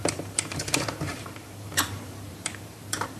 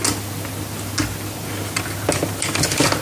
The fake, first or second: first